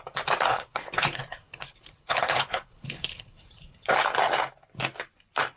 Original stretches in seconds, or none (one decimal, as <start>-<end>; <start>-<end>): 0.0-0.5; 3.9-5.6